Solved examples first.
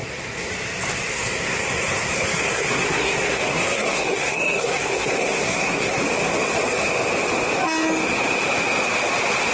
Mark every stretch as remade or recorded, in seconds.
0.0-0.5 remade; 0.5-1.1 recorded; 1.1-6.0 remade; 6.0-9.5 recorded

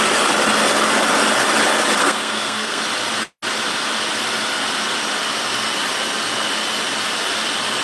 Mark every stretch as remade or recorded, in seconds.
0.0-2.0 recorded; 2.0-2.8 remade; 2.8-7.8 recorded